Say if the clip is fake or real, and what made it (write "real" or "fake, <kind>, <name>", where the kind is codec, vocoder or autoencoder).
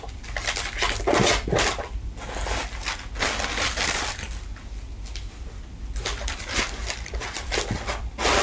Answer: real